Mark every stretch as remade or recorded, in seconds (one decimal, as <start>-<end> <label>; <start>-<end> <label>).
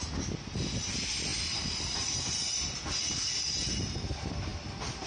0.0-5.1 recorded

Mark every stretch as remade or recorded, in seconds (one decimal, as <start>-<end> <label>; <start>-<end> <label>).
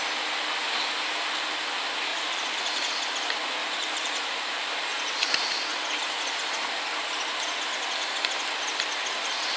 0.0-2.1 recorded; 2.1-2.9 remade; 2.9-3.6 recorded; 3.6-4.3 remade; 4.3-4.9 recorded; 4.9-5.6 remade; 5.6-9.6 recorded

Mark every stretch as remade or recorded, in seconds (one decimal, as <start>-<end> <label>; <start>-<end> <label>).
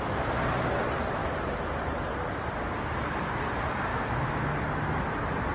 0.0-3.9 recorded; 3.9-4.6 remade; 4.6-5.5 recorded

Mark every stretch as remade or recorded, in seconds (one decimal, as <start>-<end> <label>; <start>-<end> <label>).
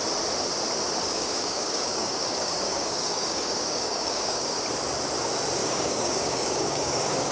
0.0-1.0 recorded; 1.0-4.6 remade; 4.6-5.6 recorded; 5.6-7.3 remade